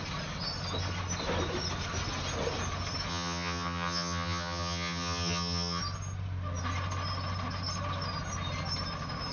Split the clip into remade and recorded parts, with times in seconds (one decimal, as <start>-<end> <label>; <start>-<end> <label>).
0.0-3.1 recorded; 3.1-5.8 remade; 5.8-9.3 recorded